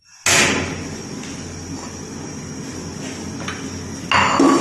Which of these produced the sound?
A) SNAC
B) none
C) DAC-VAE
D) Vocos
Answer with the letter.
B